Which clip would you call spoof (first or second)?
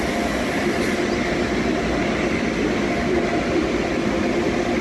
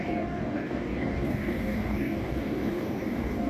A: second